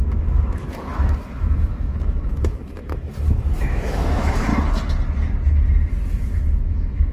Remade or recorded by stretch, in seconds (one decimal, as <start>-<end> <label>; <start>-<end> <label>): 0.0-4.5 remade; 4.5-6.1 recorded; 6.1-7.1 remade